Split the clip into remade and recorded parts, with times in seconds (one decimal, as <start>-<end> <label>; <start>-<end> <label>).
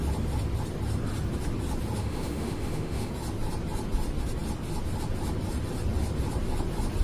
0.0-2.0 recorded; 2.0-3.1 remade; 3.1-7.0 recorded